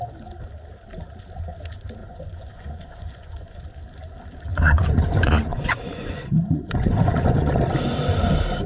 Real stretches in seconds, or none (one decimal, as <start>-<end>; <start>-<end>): 0.0-2.0; 3.6-4.5; 7.5-8.7